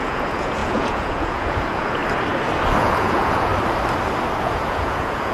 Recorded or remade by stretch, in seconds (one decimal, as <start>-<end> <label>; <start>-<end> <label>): 0.0-2.0 remade; 2.0-2.8 recorded; 2.8-3.5 remade; 3.5-4.4 recorded; 4.4-5.3 remade